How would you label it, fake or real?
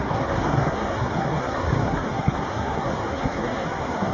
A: fake